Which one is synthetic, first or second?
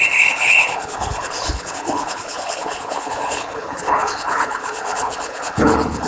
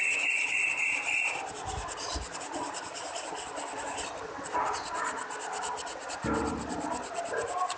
first